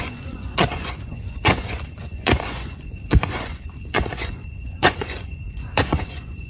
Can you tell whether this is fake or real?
fake